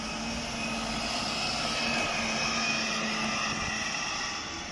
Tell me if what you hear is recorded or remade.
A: recorded